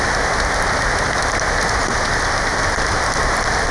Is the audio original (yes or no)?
yes